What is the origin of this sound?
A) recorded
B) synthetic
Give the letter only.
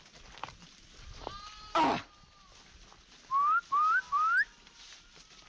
A